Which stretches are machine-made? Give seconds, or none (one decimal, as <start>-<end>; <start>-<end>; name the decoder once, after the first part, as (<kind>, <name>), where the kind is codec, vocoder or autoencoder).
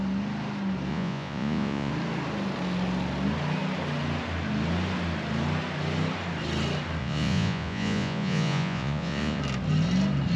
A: 0.9-1.9 (vocoder, Vocos); 7.0-9.4